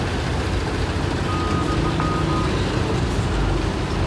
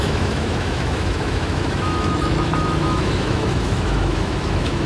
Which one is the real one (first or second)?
first